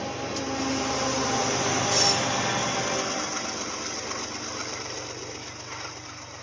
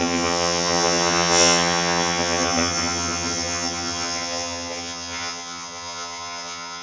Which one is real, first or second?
first